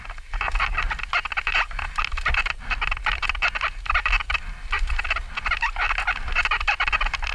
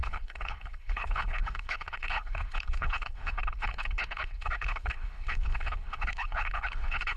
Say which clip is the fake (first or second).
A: second